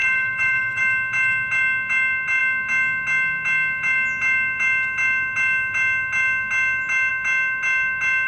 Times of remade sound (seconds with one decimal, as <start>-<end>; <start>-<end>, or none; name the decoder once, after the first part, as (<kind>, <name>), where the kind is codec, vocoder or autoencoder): 0.0-0.8 (autoencoder, DAC-VAE)